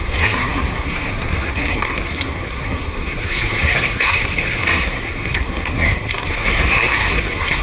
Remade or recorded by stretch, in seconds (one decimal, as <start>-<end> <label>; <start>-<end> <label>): 0.0-7.6 remade